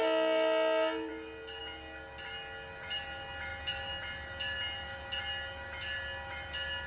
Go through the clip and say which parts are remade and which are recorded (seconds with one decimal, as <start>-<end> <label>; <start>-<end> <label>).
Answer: 0.0-6.9 recorded